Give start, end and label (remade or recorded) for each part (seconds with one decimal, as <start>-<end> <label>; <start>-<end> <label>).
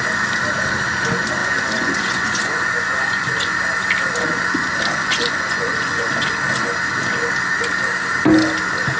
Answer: 0.0-1.4 recorded; 1.4-3.6 remade; 3.6-4.9 recorded; 4.9-6.1 remade; 6.1-9.0 recorded